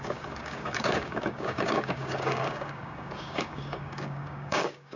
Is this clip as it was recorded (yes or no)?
no